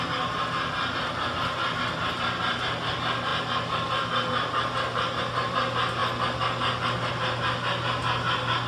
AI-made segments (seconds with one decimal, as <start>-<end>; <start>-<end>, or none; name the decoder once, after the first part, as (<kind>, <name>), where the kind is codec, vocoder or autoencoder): none